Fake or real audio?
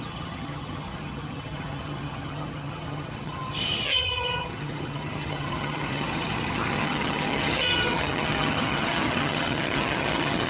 fake